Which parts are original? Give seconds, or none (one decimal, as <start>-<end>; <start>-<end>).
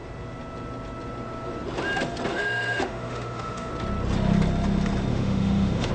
0.0-2.3; 3.7-5.1